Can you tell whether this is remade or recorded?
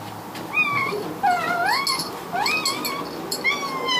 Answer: recorded